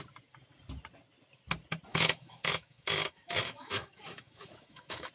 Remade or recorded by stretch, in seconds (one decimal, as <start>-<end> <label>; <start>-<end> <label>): 0.0-1.9 recorded; 1.9-5.1 remade